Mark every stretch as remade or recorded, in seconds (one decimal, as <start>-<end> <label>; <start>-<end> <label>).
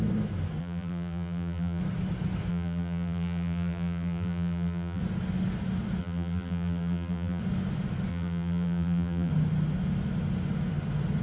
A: 0.0-0.6 recorded; 0.6-1.8 remade; 1.8-2.5 recorded; 2.5-5.0 remade; 5.0-6.0 recorded; 6.0-7.4 remade; 7.4-8.1 recorded; 8.1-9.3 remade; 9.3-11.2 recorded